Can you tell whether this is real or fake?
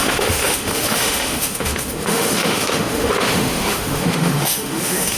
fake